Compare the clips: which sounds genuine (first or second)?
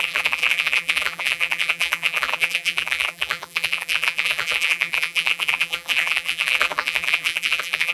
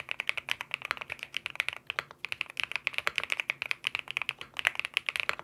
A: second